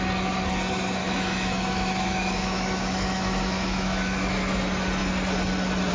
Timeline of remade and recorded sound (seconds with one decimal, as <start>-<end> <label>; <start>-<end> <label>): 0.0-1.0 recorded; 1.0-4.5 remade; 4.5-5.9 recorded

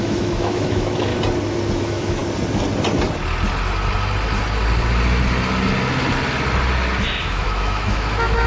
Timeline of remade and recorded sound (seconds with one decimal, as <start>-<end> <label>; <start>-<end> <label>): 0.0-1.1 remade; 1.1-1.8 recorded; 1.8-2.2 remade; 2.2-7.2 recorded; 7.2-8.5 remade

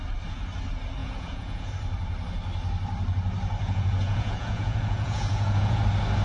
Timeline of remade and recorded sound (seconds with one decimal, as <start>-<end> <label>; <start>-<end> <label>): 0.0-1.0 recorded; 1.0-1.7 remade; 1.7-3.6 recorded; 3.6-5.8 remade; 5.8-6.2 recorded

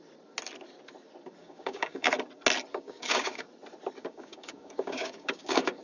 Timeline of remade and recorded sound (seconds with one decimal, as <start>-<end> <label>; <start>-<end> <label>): 0.0-1.4 recorded; 1.4-2.1 remade; 2.1-2.7 recorded; 2.7-3.5 remade; 3.5-4.0 recorded; 4.0-5.8 remade

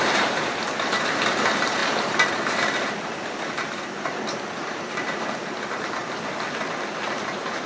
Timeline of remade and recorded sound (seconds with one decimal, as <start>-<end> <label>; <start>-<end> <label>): 0.0-6.0 remade; 6.0-7.2 recorded; 7.2-7.7 remade